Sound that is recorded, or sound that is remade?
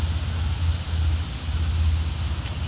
recorded